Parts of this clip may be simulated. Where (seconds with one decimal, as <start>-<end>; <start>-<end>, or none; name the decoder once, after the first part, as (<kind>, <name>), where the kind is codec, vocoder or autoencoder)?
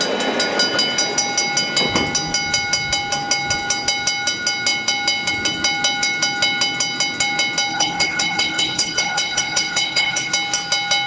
7.7-10.3 (codec, HILCodec)